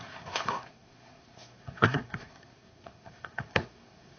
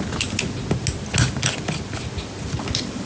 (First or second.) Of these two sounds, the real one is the second